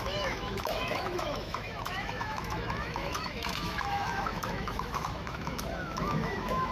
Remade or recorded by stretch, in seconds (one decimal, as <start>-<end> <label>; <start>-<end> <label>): 0.0-6.7 remade